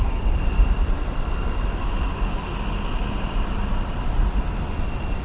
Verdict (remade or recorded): recorded